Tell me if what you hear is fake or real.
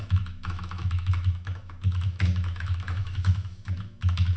fake